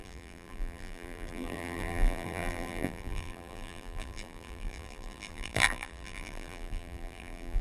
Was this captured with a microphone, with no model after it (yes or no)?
no